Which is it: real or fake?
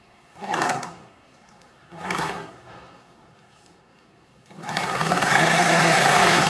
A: fake